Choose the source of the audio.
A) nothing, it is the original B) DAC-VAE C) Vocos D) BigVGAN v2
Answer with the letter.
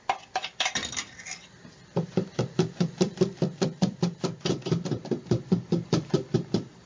D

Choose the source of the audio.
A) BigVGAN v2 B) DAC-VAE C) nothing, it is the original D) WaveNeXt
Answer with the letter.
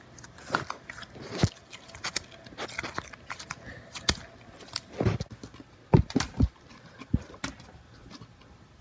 C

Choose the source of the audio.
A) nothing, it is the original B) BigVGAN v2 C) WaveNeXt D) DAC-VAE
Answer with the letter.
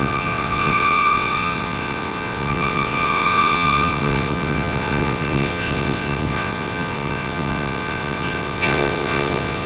C